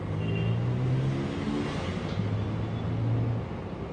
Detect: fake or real real